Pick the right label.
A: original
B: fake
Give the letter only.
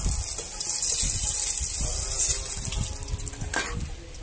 A